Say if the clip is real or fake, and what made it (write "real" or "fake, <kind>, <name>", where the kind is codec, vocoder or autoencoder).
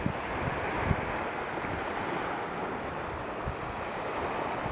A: real